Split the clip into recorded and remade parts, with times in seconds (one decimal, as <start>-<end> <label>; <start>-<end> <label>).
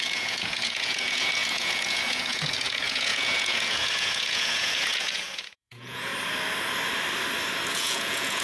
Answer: 0.0-6.1 remade; 6.1-7.7 recorded; 7.7-8.4 remade